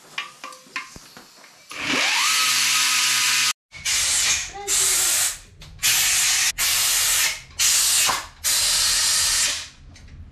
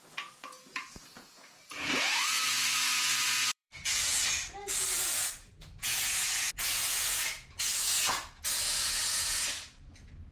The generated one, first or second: second